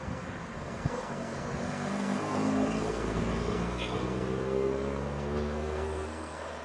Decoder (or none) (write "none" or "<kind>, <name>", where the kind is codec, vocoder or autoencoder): codec, SNAC